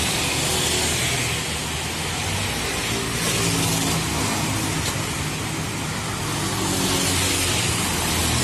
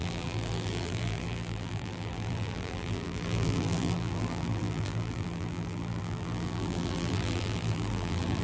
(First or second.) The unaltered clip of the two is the first